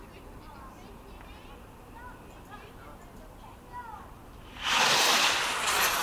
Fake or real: real